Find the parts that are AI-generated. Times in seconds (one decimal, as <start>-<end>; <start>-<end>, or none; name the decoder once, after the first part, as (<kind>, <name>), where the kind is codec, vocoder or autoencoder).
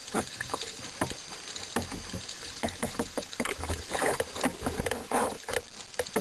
0.0-0.8 (codec, HILCodec); 2.3-4.2; 5.0-5.5